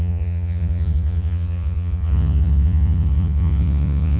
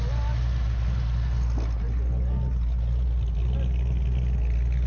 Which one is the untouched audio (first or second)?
second